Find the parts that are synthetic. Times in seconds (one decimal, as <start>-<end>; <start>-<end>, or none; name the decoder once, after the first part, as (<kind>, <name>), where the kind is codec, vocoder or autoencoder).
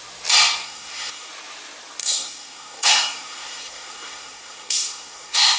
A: 0.6-1.3 (codec, SNAC); 2.0-5.6